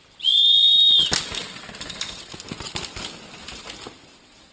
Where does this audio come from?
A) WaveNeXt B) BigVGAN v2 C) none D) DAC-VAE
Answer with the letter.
B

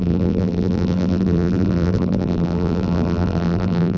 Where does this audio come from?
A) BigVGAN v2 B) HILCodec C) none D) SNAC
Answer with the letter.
A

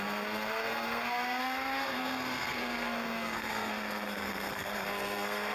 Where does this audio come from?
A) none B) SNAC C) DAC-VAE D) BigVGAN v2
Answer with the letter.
B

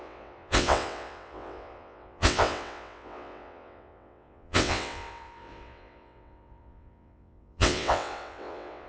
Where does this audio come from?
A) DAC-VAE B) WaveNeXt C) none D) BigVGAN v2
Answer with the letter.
B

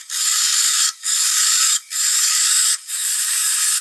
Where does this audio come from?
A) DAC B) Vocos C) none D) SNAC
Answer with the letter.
A